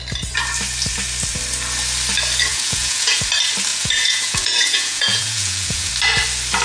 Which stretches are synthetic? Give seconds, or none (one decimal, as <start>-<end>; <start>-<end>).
2.5-3.2; 3.7-5.9